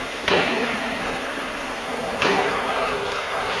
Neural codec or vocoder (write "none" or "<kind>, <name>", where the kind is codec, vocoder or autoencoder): codec, SNAC